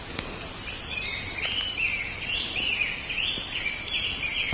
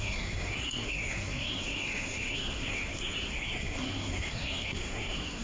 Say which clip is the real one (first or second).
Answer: first